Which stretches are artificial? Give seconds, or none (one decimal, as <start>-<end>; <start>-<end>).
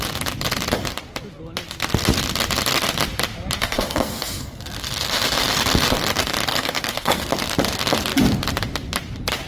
3.6-4.6; 6.5-7.3